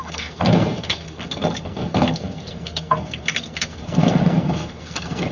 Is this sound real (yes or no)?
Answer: no